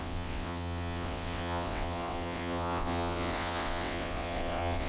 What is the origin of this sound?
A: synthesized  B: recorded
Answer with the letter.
A